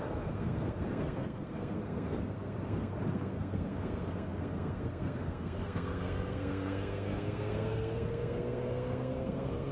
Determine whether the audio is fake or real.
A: fake